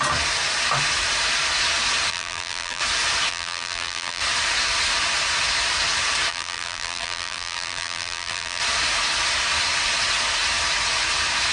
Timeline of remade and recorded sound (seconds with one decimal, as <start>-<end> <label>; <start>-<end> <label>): 0.0-2.1 recorded; 2.1-2.8 remade; 2.8-3.3 recorded; 3.3-4.2 remade; 4.2-6.3 recorded; 6.3-8.6 remade; 8.6-11.5 recorded